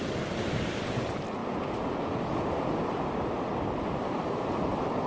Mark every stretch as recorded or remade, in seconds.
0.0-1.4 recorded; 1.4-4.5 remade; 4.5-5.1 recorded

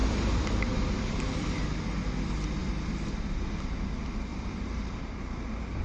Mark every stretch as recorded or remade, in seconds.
0.0-2.0 remade; 2.0-2.6 recorded; 2.6-3.1 remade; 3.1-4.3 recorded; 4.3-4.9 remade; 4.9-5.8 recorded

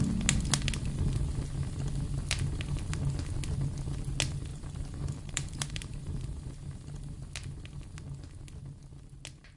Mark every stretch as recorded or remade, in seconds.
0.0-4.5 recorded; 4.5-7.2 remade; 7.2-9.6 recorded